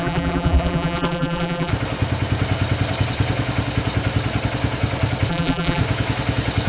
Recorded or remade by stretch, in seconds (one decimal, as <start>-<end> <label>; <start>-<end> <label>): 0.0-1.7 remade; 1.7-5.3 recorded; 5.3-5.8 remade; 5.8-6.7 recorded